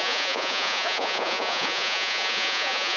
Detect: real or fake fake